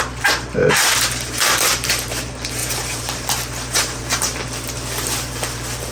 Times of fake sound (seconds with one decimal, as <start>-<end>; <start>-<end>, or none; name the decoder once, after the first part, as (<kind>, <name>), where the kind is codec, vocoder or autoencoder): 0.6-2.2 (vocoder, BigVGAN v2); 2.6-4.0